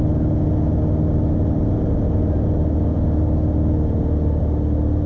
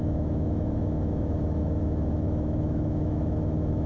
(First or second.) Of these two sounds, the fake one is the second